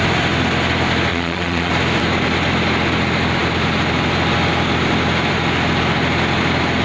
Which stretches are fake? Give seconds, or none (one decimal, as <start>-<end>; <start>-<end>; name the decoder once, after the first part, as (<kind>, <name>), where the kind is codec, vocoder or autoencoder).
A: 1.1-1.7 (vocoder, Vocos)